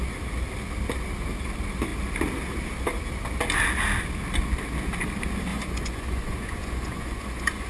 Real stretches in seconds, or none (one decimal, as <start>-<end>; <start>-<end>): 0.0-5.5